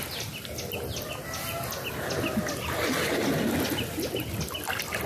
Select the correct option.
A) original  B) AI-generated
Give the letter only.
A